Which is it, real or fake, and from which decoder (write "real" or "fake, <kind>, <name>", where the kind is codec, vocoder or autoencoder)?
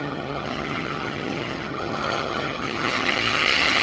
fake, vocoder, HiFi-GAN